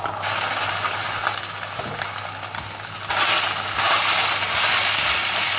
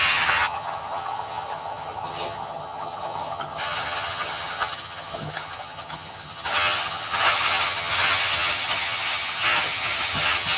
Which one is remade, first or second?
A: second